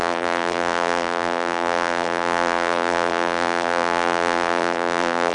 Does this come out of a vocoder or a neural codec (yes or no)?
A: yes